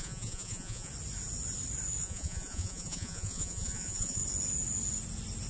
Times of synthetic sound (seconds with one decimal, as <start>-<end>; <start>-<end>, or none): 0.0-0.9; 2.0-4.2